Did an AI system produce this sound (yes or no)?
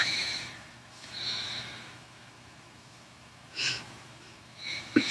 yes